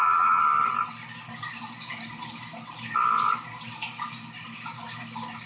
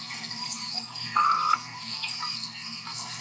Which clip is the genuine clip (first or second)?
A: first